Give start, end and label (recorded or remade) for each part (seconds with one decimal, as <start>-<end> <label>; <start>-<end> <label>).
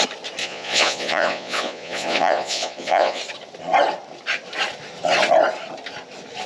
0.0-0.4 recorded; 0.4-3.2 remade; 3.2-6.5 recorded